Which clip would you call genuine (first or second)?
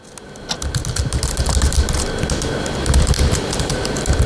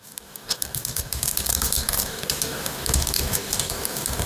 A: first